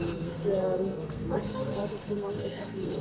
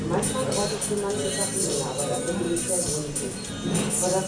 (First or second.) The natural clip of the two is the second